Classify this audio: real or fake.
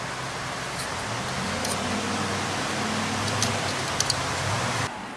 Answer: real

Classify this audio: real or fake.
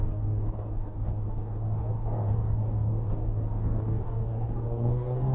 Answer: fake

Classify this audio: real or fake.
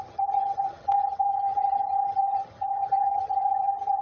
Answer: fake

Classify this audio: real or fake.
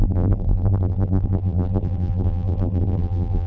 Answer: fake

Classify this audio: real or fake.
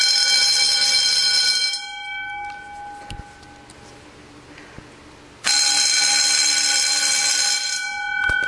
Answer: real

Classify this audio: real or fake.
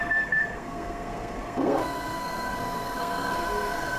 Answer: fake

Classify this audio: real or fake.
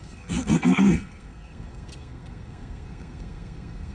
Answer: fake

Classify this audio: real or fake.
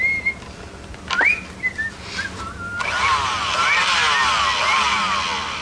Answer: real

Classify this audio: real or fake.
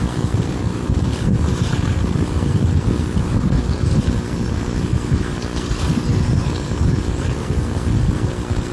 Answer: fake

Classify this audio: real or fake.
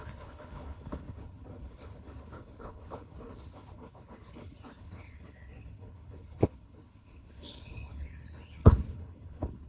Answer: fake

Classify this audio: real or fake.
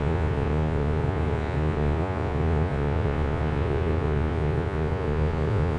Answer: fake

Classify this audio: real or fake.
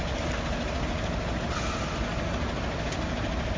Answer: real